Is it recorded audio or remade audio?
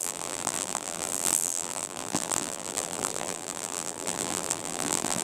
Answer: remade